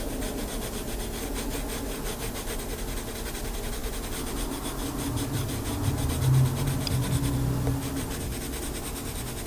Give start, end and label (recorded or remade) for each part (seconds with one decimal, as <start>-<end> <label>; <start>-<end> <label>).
0.0-3.8 recorded; 3.8-8.2 remade; 8.2-9.5 recorded